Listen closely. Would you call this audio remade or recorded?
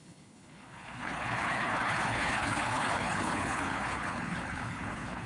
remade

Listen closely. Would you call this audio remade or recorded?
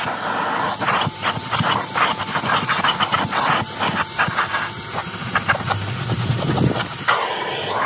recorded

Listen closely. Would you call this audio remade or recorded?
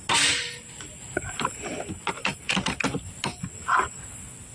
recorded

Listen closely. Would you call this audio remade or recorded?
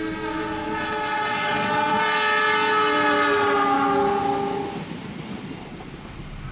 recorded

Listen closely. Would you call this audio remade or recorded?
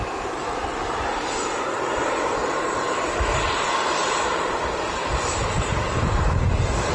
remade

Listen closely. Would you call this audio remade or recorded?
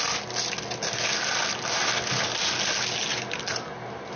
recorded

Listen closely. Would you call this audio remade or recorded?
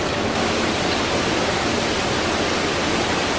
recorded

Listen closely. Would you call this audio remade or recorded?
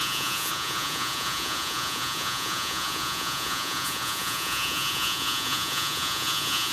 remade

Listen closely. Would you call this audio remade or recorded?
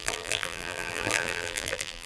remade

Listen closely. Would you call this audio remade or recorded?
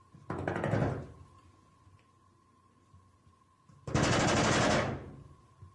recorded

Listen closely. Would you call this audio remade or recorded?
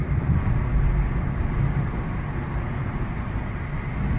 recorded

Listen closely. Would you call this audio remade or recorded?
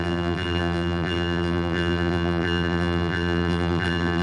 remade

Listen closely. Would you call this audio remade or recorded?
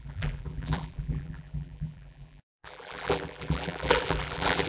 remade